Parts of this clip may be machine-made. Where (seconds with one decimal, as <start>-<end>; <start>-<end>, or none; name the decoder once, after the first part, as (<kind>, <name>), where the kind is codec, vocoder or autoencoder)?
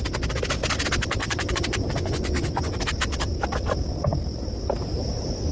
1.2-2.7 (vocoder, Vocos)